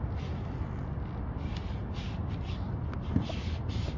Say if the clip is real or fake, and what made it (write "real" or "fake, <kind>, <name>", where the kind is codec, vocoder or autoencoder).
real